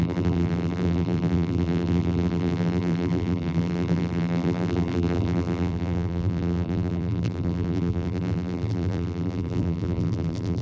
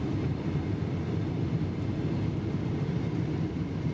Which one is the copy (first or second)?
first